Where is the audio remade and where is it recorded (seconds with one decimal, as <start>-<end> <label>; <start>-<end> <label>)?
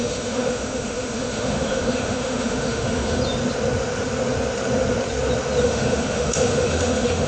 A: 0.0-3.2 remade; 3.2-5.6 recorded; 5.6-7.3 remade